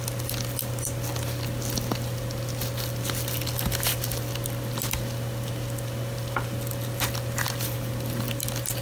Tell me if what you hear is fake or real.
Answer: real